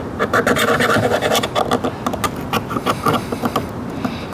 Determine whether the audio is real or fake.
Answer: real